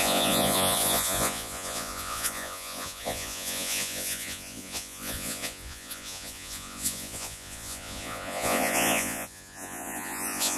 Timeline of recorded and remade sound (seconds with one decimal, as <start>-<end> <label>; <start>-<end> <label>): 0.0-10.6 remade